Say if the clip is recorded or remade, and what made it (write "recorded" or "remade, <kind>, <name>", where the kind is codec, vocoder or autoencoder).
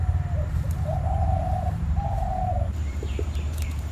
remade, vocoder, BigVGAN v2